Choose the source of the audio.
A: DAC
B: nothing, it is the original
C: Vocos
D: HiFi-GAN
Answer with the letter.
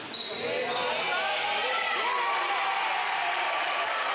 B